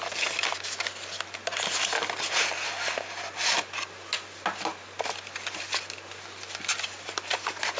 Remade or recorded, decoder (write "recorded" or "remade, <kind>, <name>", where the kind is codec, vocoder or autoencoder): recorded